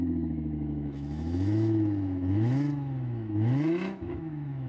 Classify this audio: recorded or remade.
remade